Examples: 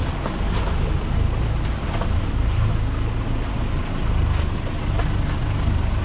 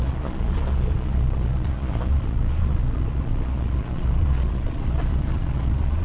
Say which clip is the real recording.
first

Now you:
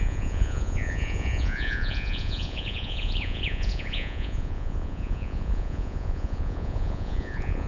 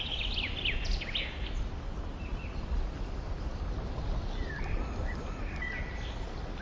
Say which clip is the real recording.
second